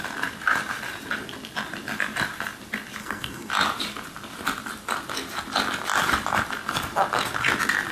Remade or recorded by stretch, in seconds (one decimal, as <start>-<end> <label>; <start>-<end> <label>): 0.0-3.0 recorded; 3.0-3.5 remade; 3.5-7.9 recorded